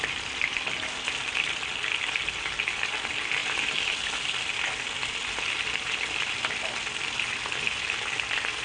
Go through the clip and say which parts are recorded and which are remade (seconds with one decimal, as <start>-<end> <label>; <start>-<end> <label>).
0.0-8.6 recorded

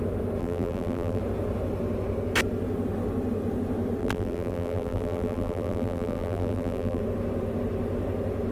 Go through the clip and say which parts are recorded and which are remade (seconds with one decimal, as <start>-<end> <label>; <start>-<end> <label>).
0.0-0.4 recorded; 0.4-1.2 remade; 1.2-4.0 recorded; 4.0-7.0 remade; 7.0-8.5 recorded